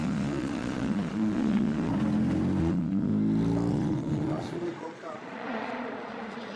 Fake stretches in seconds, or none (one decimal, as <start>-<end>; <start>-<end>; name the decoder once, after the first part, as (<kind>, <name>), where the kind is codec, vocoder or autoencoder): 0.0-1.9 (vocoder, Vocos); 2.6-3.1; 3.7-6.6